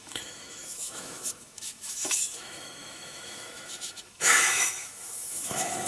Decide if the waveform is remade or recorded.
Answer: remade